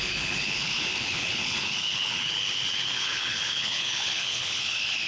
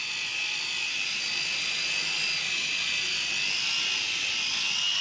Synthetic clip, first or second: first